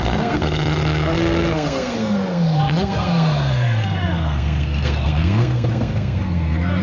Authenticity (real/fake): fake